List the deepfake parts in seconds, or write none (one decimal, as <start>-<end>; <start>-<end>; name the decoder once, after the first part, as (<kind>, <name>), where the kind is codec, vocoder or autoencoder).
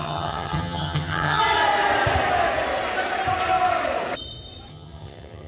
0.0-1.4 (vocoder, HiFi-GAN); 4.7-5.5